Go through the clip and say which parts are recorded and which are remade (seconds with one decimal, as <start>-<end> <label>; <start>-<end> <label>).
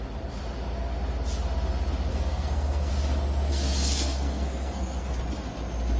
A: 0.0-2.1 recorded; 2.1-2.9 remade; 2.9-3.5 recorded; 3.5-5.2 remade; 5.2-6.0 recorded